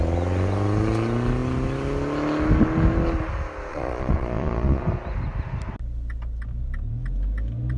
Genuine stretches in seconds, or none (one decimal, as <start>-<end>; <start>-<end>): 0.0-3.7; 4.8-7.8

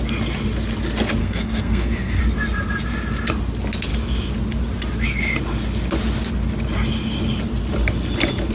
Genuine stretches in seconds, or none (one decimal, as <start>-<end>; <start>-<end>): 0.0-1.2; 2.2-8.5